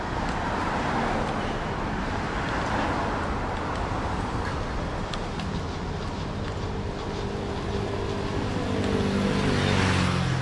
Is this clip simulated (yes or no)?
no